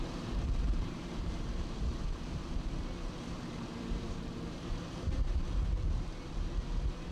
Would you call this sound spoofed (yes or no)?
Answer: yes